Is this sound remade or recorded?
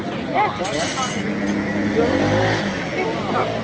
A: recorded